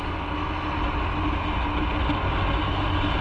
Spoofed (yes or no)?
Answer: no